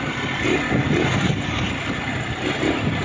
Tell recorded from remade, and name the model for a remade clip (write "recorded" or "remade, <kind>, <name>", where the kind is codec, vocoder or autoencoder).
remade, vocoder, BigVGAN v2